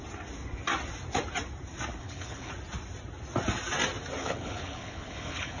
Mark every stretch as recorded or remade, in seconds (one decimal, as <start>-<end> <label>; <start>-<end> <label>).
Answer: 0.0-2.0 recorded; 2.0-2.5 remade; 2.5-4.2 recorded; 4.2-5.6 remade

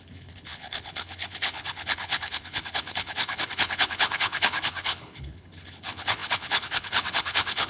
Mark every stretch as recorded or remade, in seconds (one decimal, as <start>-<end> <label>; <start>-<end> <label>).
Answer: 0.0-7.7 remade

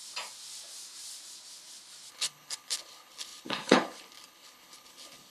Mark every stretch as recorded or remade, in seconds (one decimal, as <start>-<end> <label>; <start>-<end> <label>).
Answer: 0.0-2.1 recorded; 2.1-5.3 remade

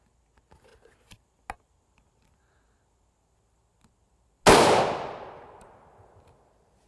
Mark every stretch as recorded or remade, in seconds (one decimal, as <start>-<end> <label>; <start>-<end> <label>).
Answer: 0.0-6.9 recorded

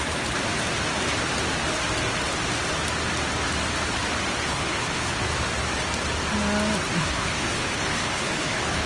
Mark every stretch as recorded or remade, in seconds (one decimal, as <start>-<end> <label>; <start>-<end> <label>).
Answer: 0.0-4.5 recorded; 4.5-5.2 remade; 5.2-7.0 recorded; 7.0-8.9 remade

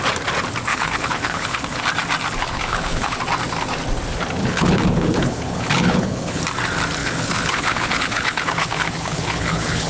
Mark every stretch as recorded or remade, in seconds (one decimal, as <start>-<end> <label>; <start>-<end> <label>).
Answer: 0.0-0.7 recorded; 0.7-1.8 remade; 1.8-2.4 recorded; 2.4-3.2 remade; 3.2-4.4 recorded; 4.4-6.4 remade; 6.4-7.0 recorded; 7.0-9.9 remade